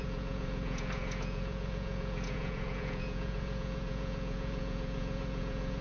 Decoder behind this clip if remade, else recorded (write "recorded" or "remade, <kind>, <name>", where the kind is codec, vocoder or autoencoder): remade, vocoder, Vocos